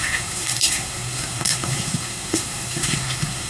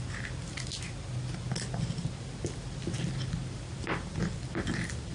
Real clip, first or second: second